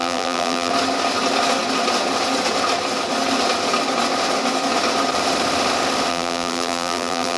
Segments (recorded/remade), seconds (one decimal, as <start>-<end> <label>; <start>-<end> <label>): 0.0-0.7 remade; 0.7-6.1 recorded; 6.1-7.4 remade